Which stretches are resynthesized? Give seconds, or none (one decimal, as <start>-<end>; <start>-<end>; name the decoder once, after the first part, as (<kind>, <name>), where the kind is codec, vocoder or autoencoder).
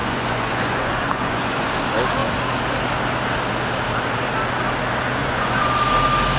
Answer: 0.0-1.7 (vocoder, Vocos); 5.2-5.7